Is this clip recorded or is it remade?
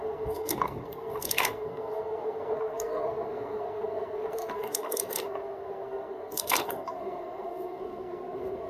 remade